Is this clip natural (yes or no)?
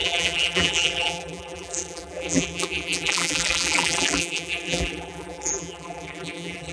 no